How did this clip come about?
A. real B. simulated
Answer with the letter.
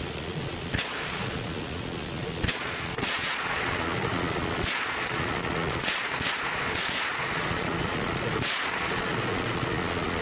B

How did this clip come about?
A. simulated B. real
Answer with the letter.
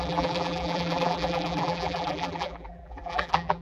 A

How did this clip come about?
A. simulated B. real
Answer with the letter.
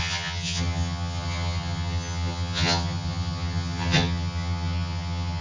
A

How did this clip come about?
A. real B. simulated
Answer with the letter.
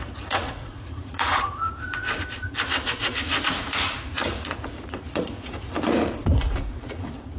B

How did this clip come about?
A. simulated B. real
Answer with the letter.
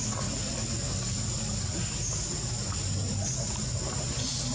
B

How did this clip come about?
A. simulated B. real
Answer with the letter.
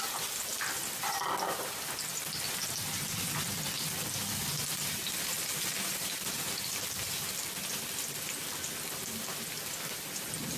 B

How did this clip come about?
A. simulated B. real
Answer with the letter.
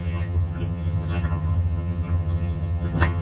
A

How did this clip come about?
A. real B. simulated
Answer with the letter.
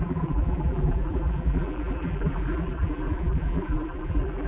B